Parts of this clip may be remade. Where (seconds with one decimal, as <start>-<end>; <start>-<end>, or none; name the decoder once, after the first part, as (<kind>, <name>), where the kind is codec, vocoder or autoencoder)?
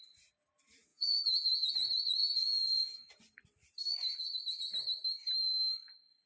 0.9-1.7 (vocoder, Vocos); 2.2-3.1